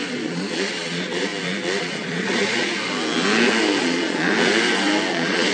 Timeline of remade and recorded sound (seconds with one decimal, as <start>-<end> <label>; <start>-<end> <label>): 0.0-1.3 remade; 1.3-1.8 recorded; 1.8-2.7 remade; 2.7-3.8 recorded; 3.8-4.3 remade; 4.3-5.1 recorded; 5.1-5.5 remade